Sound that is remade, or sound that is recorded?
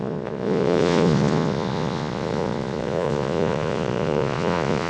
remade